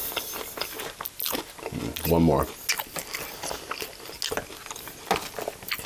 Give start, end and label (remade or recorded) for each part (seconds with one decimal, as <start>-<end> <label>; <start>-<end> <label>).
0.0-5.9 recorded